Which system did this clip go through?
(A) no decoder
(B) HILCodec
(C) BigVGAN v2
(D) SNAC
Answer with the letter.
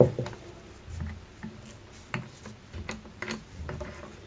A